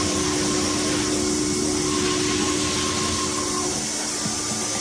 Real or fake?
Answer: real